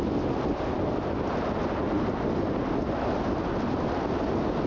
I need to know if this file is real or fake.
real